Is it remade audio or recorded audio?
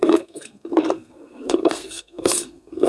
remade